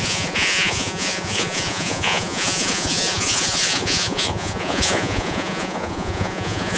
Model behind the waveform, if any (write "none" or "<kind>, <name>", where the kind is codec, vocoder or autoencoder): vocoder, Vocos